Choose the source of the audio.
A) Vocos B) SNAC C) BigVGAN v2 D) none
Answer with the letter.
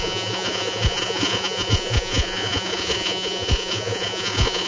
A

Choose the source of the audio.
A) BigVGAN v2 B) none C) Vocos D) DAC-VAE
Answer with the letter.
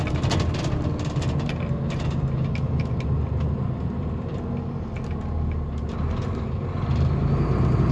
B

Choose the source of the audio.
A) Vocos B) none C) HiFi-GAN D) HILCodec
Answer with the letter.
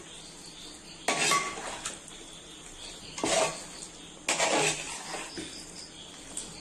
B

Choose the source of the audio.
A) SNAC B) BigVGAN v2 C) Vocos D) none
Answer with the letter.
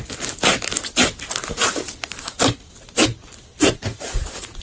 D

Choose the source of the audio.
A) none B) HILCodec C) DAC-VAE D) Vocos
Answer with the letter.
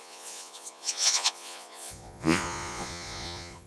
D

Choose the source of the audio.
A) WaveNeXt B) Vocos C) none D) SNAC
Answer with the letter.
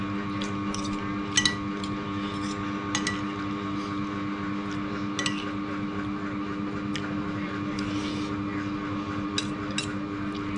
C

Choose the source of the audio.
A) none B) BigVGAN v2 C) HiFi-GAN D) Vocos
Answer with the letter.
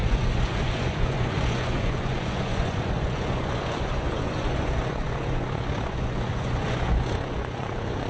D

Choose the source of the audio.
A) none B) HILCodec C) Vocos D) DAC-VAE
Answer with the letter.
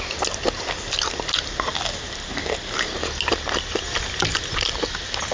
A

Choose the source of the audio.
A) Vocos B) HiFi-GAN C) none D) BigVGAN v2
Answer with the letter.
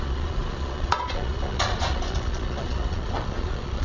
A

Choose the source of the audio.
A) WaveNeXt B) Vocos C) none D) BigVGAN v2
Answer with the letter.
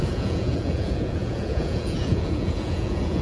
B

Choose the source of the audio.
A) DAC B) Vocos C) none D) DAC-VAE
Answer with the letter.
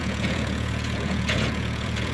B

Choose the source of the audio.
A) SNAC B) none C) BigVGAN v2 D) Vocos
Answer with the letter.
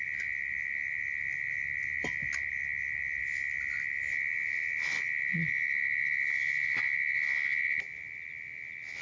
B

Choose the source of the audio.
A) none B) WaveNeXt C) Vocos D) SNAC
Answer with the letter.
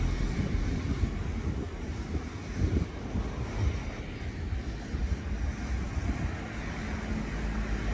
A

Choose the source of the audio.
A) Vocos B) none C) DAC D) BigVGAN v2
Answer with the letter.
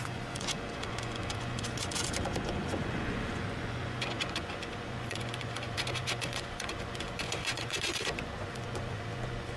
A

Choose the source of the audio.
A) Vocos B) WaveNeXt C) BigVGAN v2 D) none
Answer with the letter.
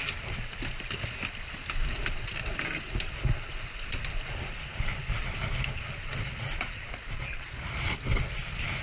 D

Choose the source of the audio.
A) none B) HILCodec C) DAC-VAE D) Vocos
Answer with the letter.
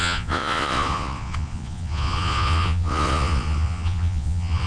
D